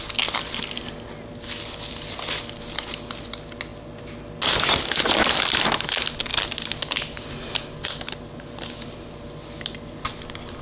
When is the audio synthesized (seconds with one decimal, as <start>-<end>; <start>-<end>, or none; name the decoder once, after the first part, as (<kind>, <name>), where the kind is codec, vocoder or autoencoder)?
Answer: none